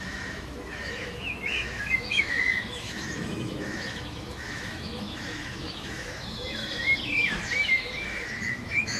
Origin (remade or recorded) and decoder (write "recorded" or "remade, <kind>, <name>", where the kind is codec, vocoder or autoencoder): remade, autoencoder, DAC-VAE